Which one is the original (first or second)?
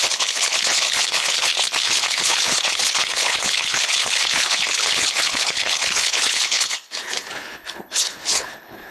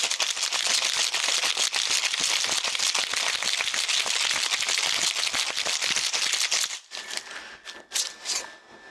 second